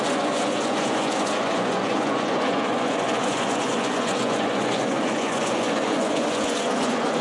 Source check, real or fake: fake